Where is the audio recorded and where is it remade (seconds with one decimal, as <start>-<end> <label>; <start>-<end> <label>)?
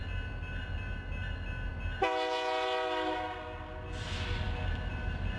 0.0-5.4 recorded